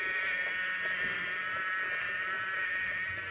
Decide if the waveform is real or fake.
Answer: real